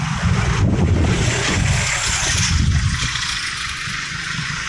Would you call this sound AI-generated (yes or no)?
yes